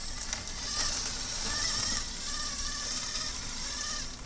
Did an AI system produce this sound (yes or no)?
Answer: no